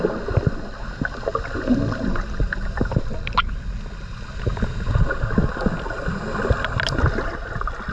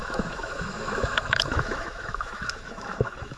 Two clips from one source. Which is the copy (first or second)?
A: second